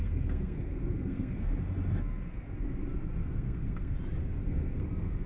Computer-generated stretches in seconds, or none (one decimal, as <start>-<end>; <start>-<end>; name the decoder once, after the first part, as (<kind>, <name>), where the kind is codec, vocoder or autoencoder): 0.0-1.3 (codec, SNAC); 3.2-3.9; 4.4-5.3